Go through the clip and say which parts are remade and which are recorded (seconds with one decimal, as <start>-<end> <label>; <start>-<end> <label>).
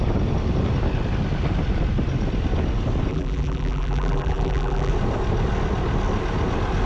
0.0-3.1 recorded; 3.1-4.9 remade; 4.9-6.9 recorded